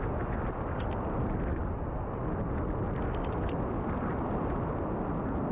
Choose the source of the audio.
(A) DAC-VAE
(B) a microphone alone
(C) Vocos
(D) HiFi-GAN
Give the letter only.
B